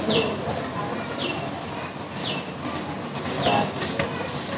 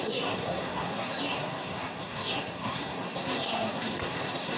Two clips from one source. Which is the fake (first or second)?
second